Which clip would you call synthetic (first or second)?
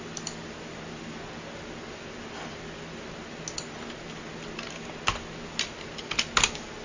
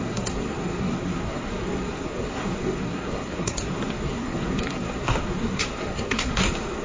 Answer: second